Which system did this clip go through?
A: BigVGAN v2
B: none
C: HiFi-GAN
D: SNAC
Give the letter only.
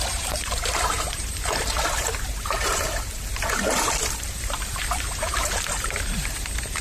A